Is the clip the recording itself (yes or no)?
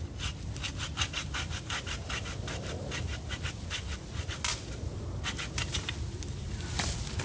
yes